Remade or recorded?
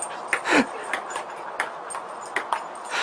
recorded